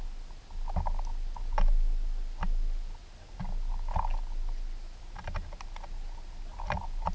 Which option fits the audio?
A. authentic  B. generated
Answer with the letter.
A